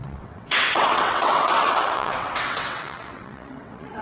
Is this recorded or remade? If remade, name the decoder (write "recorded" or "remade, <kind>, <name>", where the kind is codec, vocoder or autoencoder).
remade, vocoder, WaveNeXt